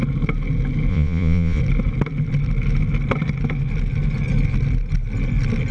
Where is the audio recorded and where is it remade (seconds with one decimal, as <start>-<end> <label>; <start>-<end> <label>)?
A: 0.0-0.9 recorded; 0.9-1.6 remade; 1.6-5.7 recorded